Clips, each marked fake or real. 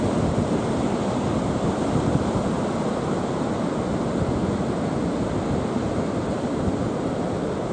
real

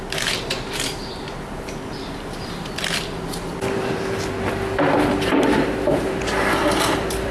fake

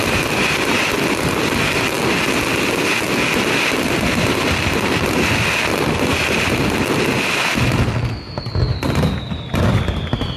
real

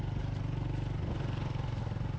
real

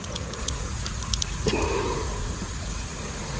fake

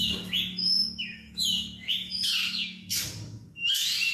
fake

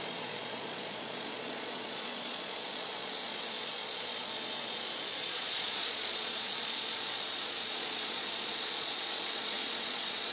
fake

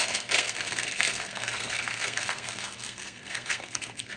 fake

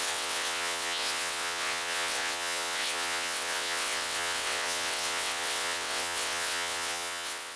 fake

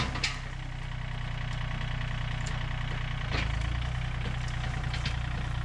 real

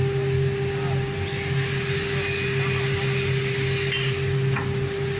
real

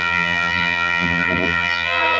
fake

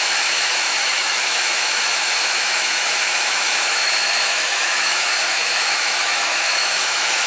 fake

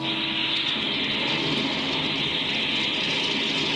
real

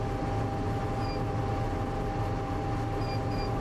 real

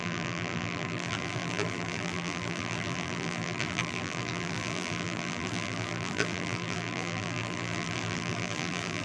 fake